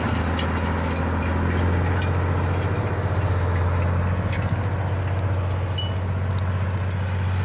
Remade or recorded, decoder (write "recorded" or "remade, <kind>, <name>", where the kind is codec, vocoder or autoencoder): recorded